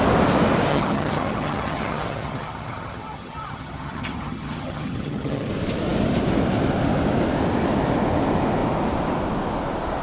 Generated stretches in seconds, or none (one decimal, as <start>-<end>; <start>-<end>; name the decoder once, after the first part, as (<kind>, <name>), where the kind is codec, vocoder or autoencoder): 0.7-5.5 (vocoder, HiFi-GAN)